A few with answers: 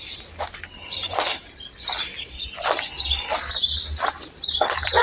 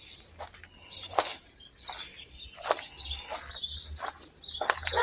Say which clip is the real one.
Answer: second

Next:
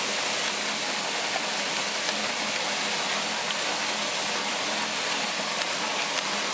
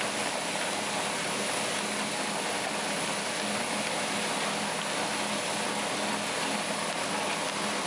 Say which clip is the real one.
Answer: second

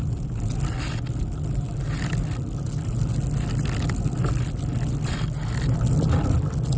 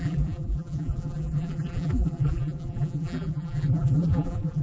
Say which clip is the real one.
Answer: first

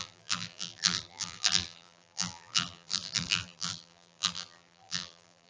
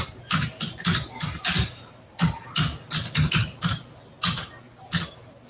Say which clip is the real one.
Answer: second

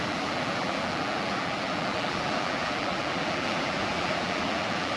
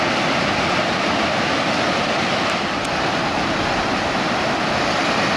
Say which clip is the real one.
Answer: second